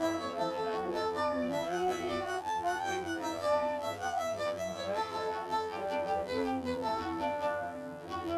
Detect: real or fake fake